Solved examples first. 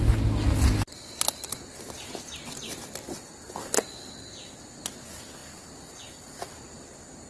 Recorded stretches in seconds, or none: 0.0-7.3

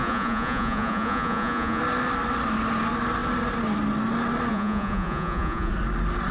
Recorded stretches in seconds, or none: 1.8-4.5; 5.7-6.3

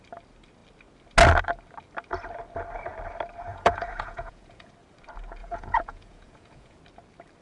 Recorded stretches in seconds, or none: 0.0-3.5; 4.7-5.4; 6.8-7.4

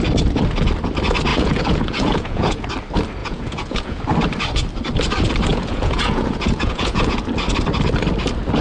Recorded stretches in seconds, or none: 0.0-1.3; 2.7-3.2; 4.0-5.5; 7.2-8.6

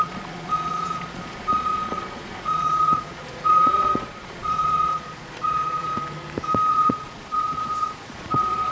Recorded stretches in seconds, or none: 5.9-6.7

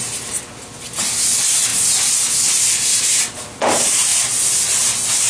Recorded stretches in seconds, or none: 0.0-5.3

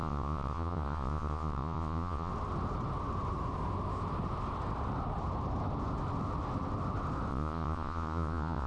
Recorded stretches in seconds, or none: 2.3-7.3